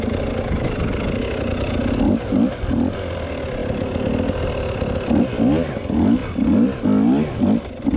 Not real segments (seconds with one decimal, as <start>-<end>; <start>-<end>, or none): none